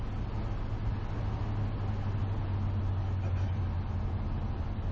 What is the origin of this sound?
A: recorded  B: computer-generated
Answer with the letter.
A